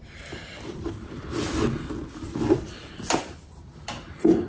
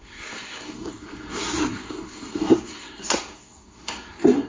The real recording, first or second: first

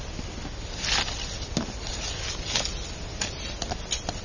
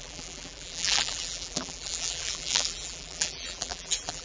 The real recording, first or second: first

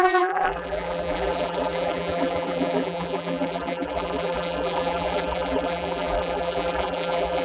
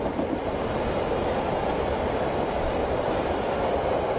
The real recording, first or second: second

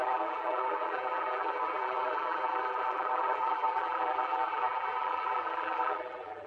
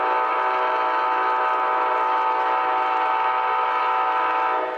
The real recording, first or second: second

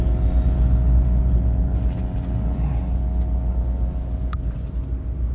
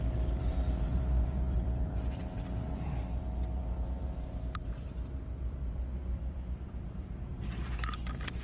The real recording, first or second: first